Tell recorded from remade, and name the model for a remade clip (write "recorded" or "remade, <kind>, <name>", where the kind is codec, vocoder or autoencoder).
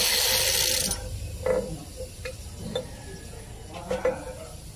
recorded